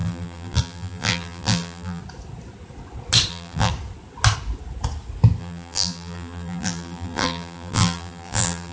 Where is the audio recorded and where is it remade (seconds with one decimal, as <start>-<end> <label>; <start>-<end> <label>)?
0.0-2.0 remade; 2.0-3.3 recorded; 3.3-3.7 remade; 3.7-5.4 recorded; 5.4-8.7 remade